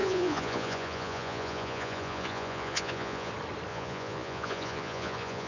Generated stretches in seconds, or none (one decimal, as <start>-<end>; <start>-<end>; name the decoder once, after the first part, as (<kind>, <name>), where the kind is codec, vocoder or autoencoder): 0.0-3.3 (vocoder, Vocos); 3.7-5.5